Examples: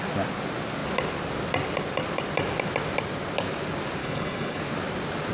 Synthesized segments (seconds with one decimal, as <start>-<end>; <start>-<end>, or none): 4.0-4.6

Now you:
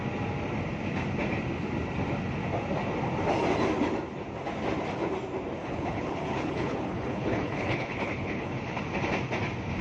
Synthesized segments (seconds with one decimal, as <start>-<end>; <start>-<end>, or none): 5.6-8.8

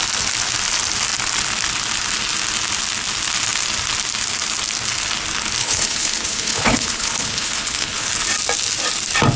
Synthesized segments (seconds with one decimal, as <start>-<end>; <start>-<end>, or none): 5.6-8.1